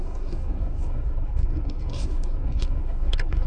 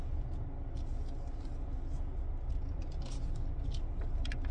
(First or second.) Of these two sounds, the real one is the second